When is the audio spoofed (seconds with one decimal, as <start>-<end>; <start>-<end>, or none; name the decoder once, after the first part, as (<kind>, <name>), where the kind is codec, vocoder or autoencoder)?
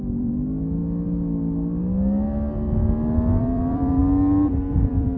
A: 0.0-0.8 (vocoder, BigVGAN v2); 3.4-4.0; 4.7-5.2